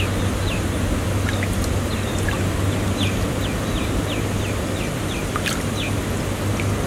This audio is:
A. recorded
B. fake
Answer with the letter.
A